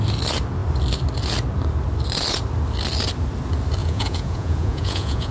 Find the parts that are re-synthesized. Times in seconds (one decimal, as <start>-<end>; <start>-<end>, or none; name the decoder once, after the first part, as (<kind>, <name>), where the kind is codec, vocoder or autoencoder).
3.8-5.3 (vocoder, Vocos)